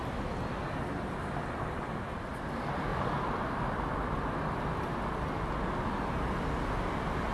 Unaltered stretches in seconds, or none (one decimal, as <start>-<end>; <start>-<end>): 0.0-7.3